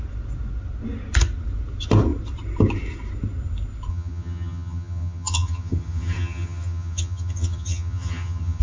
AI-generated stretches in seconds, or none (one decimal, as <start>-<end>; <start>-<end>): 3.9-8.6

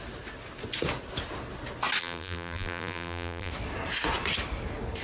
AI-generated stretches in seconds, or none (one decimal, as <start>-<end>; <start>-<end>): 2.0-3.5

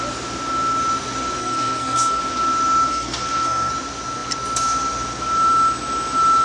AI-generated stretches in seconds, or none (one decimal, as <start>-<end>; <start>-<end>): 1.4-2.2; 2.9-3.7

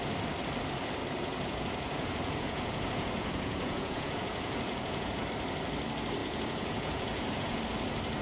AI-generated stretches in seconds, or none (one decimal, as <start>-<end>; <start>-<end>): 1.0-5.3; 6.2-7.6

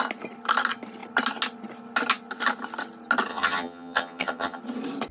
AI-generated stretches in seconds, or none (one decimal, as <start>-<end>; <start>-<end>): 3.3-4.6

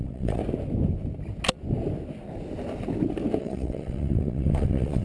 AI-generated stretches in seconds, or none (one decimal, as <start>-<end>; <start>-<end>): 0.0-0.4; 3.4-5.0

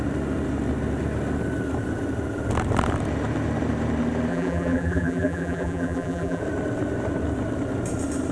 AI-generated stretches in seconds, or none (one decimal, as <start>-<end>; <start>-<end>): 4.3-6.4